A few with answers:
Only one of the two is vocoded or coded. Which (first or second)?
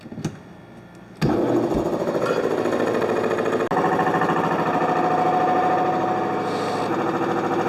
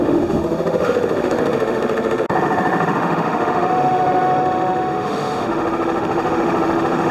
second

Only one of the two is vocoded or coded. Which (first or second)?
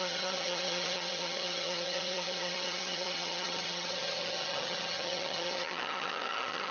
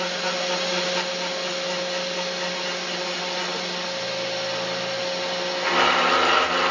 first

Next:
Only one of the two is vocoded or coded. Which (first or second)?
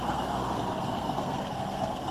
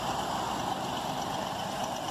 first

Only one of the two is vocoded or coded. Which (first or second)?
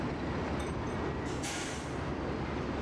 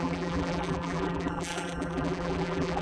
second